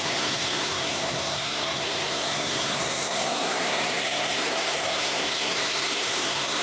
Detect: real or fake fake